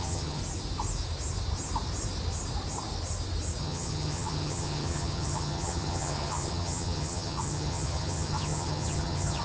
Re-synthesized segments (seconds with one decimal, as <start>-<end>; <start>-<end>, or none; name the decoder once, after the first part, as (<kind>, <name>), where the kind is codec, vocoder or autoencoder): 0.0-0.4 (vocoder, HiFi-GAN); 3.6-9.4

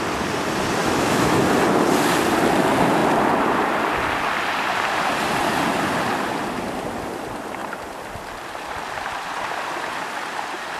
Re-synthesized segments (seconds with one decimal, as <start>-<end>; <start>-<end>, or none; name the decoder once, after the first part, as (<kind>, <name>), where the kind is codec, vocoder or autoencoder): 0.8-1.4 (autoencoder, DAC-VAE)

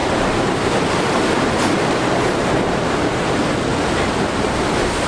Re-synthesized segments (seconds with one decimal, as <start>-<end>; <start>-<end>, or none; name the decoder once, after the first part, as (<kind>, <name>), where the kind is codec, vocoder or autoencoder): 0.0-3.1 (vocoder, BigVGAN v2); 3.7-4.6

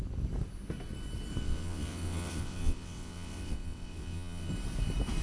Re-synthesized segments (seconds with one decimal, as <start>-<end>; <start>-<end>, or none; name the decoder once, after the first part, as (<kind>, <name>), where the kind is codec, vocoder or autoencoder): 1.4-4.5 (vocoder, WaveNeXt)

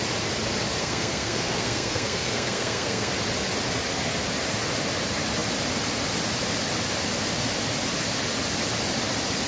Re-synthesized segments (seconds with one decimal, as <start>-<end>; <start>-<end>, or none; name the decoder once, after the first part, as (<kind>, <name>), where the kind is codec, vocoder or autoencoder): 0.8-3.1 (codec, SNAC)